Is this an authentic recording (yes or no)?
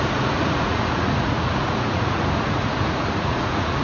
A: no